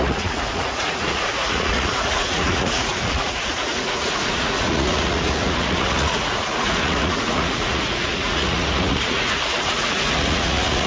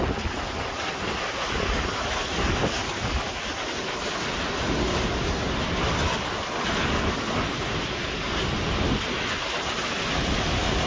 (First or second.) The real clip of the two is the second